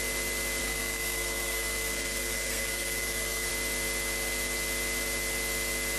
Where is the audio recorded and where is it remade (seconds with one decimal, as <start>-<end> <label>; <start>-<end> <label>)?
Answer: 0.0-0.6 recorded; 0.6-3.5 remade; 3.5-6.0 recorded

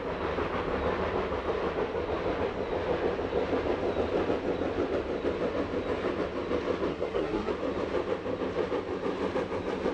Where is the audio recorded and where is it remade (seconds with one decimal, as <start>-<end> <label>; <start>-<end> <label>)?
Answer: 0.0-6.9 recorded; 6.9-7.5 remade; 7.5-9.9 recorded

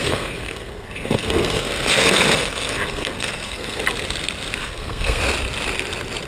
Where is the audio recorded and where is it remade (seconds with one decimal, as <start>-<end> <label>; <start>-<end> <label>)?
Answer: 0.0-3.8 remade; 3.8-4.6 recorded; 4.6-5.2 remade; 5.2-6.3 recorded

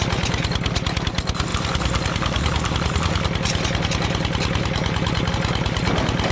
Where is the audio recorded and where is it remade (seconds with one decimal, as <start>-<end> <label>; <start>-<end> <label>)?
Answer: 0.0-6.3 recorded

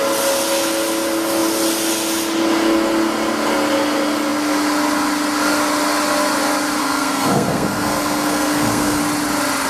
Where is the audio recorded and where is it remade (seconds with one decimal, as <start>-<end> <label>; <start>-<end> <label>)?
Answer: 0.0-6.8 recorded; 6.8-9.0 remade; 9.0-9.7 recorded

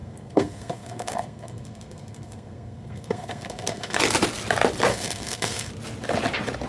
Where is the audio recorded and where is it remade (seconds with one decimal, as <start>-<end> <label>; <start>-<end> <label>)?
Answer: 0.0-4.0 remade; 4.0-4.9 recorded; 4.9-5.7 remade; 5.7-6.7 recorded